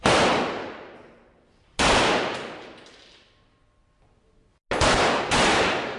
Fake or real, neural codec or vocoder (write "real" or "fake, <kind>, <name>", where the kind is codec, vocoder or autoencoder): real